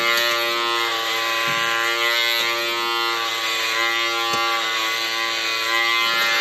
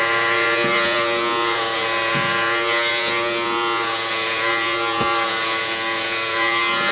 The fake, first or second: second